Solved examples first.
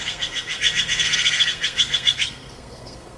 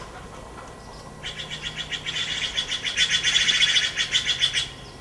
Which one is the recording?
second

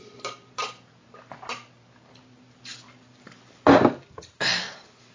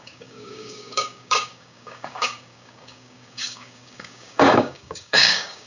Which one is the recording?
first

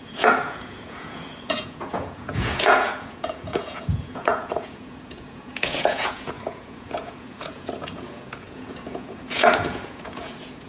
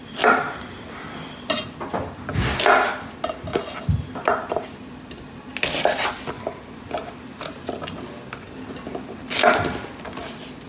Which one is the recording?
second